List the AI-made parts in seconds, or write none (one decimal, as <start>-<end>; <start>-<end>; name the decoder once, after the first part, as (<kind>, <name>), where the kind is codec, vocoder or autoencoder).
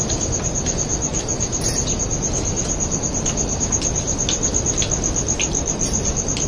none